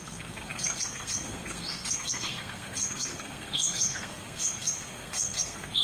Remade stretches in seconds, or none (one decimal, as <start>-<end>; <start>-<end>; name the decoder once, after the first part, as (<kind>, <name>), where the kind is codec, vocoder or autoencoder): 0.0-5.8 (codec, SNAC)